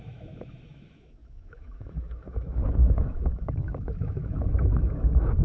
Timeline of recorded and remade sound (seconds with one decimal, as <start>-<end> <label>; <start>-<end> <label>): 0.0-5.4 remade